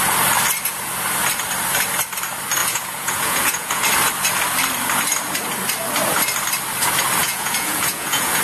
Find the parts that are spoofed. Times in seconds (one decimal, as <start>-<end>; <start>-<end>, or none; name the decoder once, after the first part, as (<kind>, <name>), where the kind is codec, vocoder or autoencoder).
2.6-3.8 (vocoder, Vocos); 7.2-8.4